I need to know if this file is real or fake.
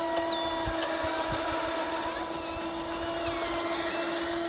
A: real